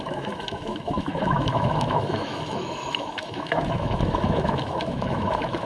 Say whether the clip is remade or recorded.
remade